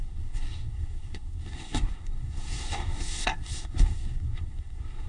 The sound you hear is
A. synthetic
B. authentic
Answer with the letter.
A